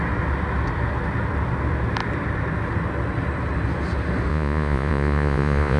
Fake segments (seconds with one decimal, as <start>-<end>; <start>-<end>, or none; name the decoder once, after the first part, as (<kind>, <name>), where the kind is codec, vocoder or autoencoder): 4.3-5.8 (vocoder, Vocos)